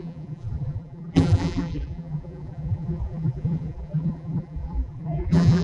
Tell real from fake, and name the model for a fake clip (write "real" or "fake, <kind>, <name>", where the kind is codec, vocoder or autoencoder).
fake, vocoder, BigVGAN v2